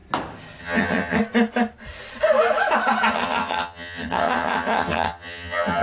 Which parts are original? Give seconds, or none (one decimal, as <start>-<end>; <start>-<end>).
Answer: 0.0-0.6; 1.2-3.1